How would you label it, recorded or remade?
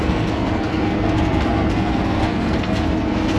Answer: remade